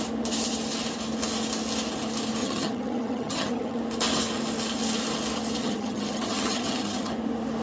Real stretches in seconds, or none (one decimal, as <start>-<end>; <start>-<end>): 0.0-2.4; 3.8-5.6; 7.1-7.6